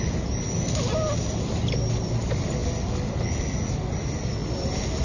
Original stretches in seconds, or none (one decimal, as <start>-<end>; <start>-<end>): 0.0-5.0